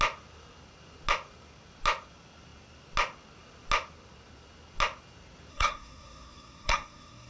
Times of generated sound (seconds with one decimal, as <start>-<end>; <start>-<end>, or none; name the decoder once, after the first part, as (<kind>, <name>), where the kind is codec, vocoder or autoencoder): 5.5-7.3 (codec, SNAC)